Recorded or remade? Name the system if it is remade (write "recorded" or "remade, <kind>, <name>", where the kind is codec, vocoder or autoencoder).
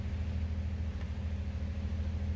recorded